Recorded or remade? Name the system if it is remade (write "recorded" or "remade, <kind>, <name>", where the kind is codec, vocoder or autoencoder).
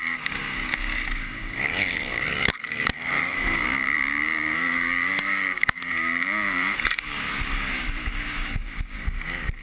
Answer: remade, codec, DAC